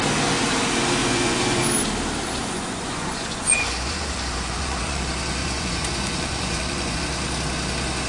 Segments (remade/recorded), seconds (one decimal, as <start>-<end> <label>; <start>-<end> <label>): 0.0-1.0 recorded; 1.0-1.6 remade; 1.6-2.4 recorded; 2.4-5.0 remade; 5.0-5.4 recorded; 5.4-7.0 remade; 7.0-8.1 recorded